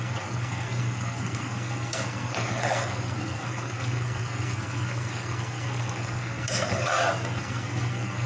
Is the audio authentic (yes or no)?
no